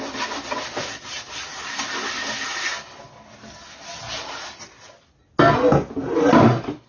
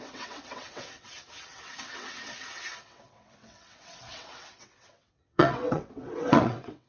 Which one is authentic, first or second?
first